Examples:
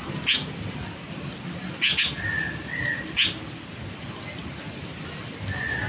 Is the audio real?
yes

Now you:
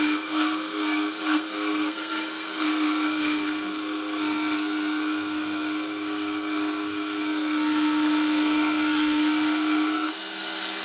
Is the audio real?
no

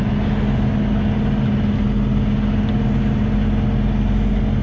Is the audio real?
yes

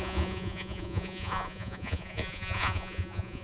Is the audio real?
no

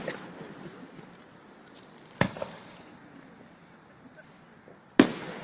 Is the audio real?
yes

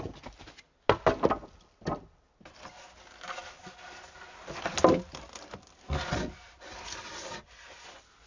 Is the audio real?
yes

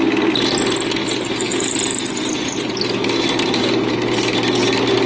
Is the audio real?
yes